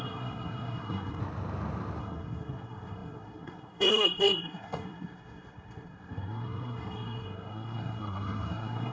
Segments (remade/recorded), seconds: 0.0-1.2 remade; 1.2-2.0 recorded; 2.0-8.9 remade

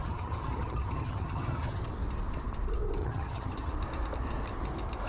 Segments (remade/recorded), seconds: 0.0-1.9 remade; 1.9-3.0 recorded; 3.0-3.7 remade; 3.7-5.1 recorded

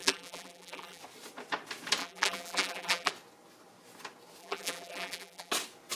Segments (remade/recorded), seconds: 0.0-1.0 remade; 1.0-2.0 recorded; 2.0-3.1 remade; 3.1-4.4 recorded; 4.4-5.5 remade; 5.5-6.0 recorded

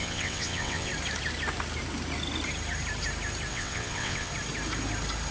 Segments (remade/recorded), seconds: 0.0-0.9 remade; 0.9-3.5 recorded; 3.5-4.3 remade; 4.3-5.3 recorded

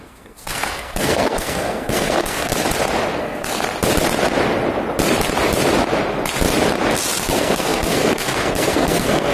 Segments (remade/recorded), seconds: 0.0-2.5 remade; 2.5-3.2 recorded; 3.2-3.6 remade; 3.6-7.2 recorded; 7.2-9.3 remade

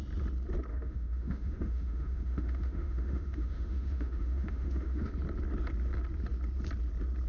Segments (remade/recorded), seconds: 0.0-0.7 recorded; 0.7-5.1 remade; 5.1-7.3 recorded